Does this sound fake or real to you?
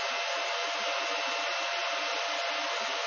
real